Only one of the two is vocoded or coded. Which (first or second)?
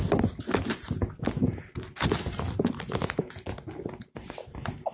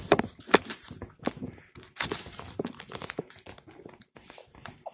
second